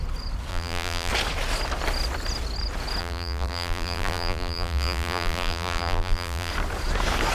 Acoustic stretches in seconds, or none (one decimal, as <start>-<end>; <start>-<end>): 0.0-0.5; 1.1-3.0; 6.5-7.3